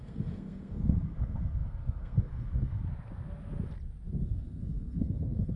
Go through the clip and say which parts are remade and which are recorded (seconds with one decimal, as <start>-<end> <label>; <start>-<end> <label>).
0.0-2.8 remade; 2.8-4.2 recorded; 4.2-5.6 remade